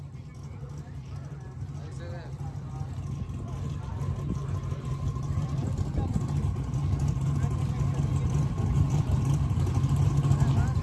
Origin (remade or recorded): recorded